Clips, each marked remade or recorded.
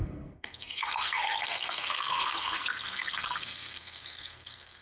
remade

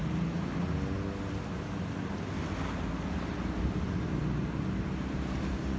recorded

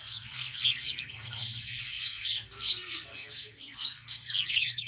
remade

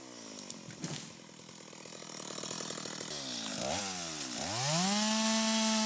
recorded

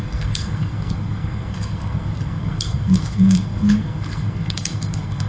remade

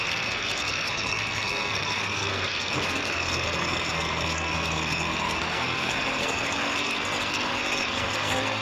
remade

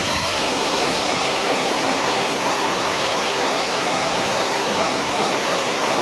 remade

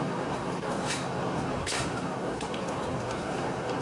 remade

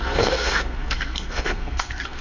remade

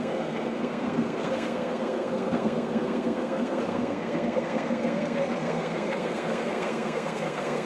remade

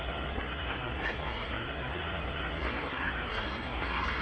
remade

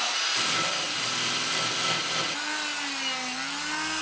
recorded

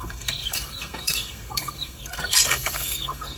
remade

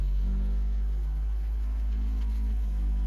remade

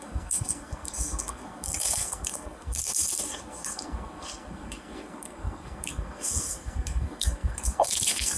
remade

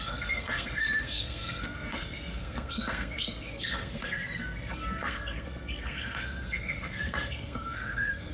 remade